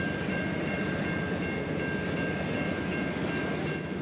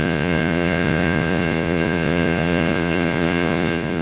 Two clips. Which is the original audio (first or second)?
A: first